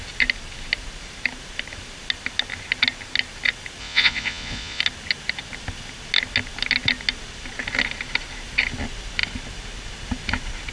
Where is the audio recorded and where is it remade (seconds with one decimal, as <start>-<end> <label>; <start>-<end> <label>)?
0.0-3.8 recorded; 3.8-4.8 remade; 4.8-10.7 recorded